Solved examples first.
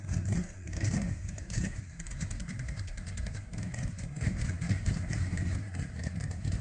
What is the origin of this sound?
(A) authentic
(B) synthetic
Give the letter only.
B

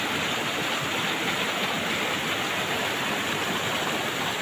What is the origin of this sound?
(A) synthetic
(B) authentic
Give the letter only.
B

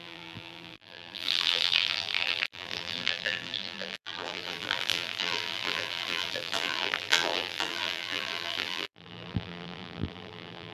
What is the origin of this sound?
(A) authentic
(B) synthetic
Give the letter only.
B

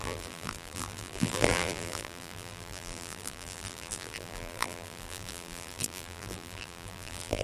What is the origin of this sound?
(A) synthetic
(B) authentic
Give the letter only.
A